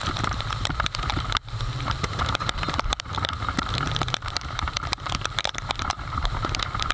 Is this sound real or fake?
fake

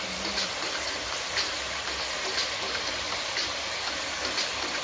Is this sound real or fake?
fake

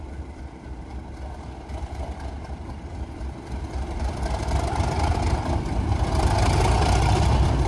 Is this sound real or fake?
fake